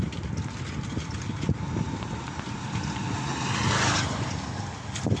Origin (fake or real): real